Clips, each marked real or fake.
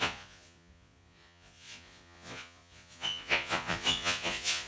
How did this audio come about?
fake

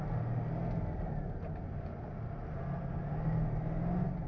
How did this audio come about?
real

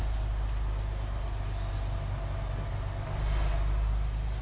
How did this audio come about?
real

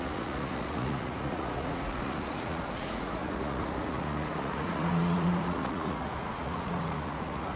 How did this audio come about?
fake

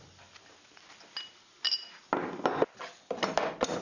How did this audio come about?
real